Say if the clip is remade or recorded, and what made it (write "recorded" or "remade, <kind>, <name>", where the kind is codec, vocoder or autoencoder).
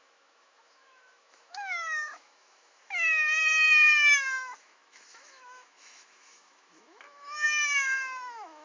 remade, autoencoder, DAC-VAE